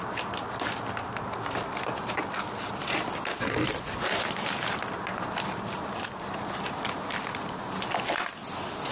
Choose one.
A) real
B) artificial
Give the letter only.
A